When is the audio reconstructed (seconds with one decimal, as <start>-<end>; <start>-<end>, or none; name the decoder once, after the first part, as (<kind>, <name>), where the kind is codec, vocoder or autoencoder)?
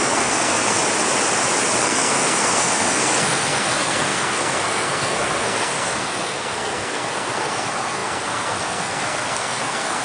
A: 0.0-0.8 (codec, SNAC); 1.8-10.0